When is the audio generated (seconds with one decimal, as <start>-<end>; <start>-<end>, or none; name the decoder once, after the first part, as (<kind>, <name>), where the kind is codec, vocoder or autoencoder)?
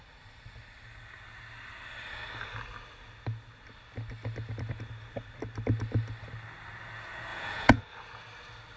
7.3-7.8 (vocoder, Vocos)